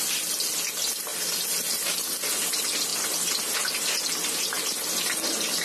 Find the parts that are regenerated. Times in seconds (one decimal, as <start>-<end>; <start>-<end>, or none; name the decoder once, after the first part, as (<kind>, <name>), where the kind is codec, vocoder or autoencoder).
none